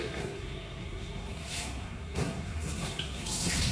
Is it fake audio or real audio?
fake